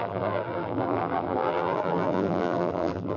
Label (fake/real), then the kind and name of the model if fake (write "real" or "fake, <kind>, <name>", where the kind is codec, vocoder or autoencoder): fake, vocoder, BigVGAN v2